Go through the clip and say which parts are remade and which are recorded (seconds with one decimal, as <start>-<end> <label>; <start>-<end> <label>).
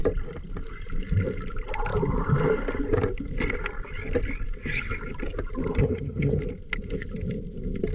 0.0-5.8 recorded; 5.8-6.4 remade; 6.4-7.9 recorded